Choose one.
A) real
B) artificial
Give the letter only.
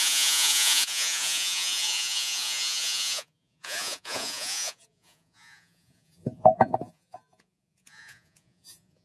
B